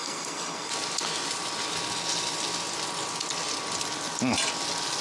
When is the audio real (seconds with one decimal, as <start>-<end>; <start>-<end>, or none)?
0.7-5.0